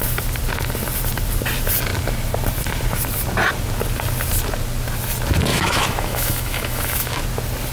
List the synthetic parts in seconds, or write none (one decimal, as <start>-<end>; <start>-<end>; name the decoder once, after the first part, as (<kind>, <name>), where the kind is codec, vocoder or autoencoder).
5.5-7.2 (autoencoder, DAC-VAE)

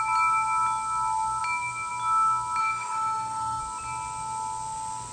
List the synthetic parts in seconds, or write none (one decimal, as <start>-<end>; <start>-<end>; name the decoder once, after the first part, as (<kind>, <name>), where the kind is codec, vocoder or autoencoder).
2.6-3.6 (autoencoder, DAC-VAE)